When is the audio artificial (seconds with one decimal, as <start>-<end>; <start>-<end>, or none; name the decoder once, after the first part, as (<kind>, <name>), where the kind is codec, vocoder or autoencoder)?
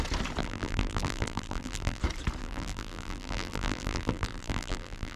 0.4-2.0 (vocoder, BigVGAN v2); 2.4-5.2